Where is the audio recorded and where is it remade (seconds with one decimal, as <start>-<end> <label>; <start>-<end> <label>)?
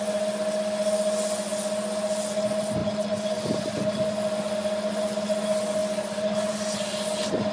0.0-7.5 recorded